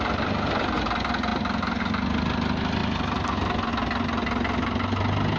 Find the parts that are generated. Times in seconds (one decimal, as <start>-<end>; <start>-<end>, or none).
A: none

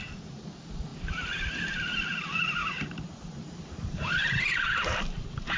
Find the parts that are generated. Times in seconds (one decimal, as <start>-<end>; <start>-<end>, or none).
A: 0.9-1.6; 2.6-5.6

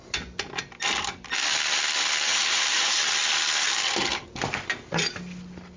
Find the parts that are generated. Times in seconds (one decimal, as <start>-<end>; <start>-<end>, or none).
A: 2.3-3.0